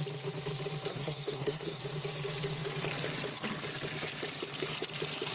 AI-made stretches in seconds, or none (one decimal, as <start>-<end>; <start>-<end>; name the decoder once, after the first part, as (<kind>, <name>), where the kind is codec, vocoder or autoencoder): 0.9-1.8 (codec, SNAC)